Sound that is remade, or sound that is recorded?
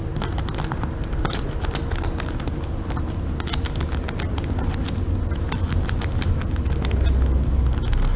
recorded